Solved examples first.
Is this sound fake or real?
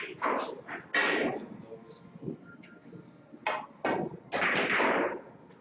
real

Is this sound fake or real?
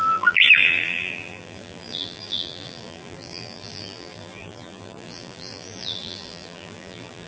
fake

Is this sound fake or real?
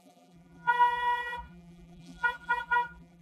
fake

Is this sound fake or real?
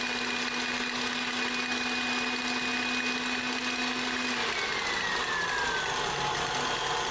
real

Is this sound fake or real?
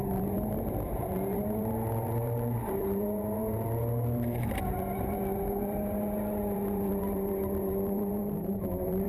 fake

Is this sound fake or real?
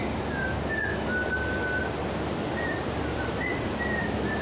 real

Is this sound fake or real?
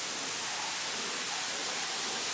real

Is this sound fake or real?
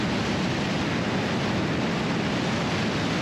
real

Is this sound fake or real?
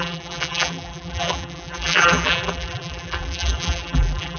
fake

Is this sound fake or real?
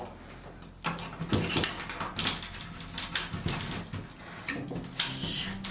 real